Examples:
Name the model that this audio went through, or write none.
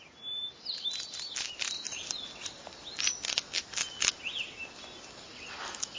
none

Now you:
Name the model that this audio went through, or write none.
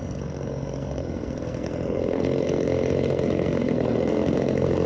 codec, SNAC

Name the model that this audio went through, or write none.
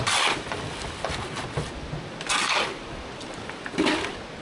none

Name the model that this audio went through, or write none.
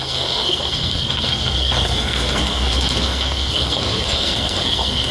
codec, SNAC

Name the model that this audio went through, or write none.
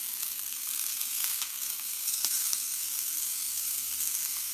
codec, SNAC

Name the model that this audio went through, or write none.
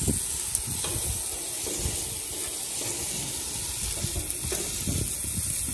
none